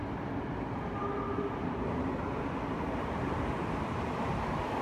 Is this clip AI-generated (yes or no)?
no